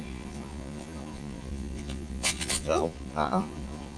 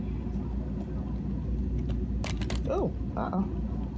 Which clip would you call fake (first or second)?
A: first